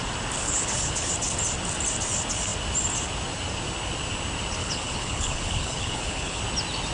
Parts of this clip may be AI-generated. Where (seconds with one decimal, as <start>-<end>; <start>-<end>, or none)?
0.4-1.1; 4.6-6.4